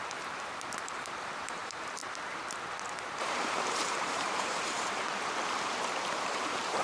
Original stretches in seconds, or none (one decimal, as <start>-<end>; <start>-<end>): 2.0-3.0; 5.1-6.1